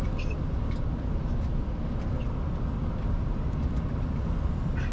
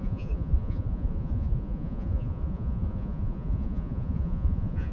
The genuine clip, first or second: first